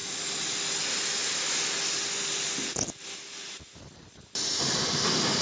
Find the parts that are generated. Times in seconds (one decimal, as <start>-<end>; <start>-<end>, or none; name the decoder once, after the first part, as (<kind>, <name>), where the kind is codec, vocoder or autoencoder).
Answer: none